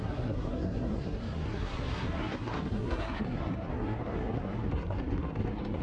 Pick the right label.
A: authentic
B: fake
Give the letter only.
B